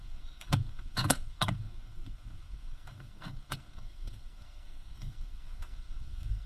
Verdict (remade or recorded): remade